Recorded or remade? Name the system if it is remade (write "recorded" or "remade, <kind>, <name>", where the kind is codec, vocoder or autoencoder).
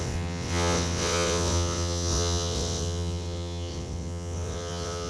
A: remade, vocoder, WaveNeXt